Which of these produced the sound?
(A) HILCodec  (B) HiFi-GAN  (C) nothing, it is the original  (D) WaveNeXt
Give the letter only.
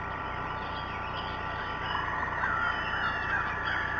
C